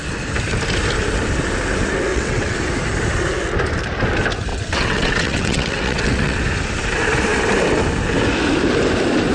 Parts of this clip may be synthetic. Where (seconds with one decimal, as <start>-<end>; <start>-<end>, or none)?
2.1-2.6; 4.5-6.4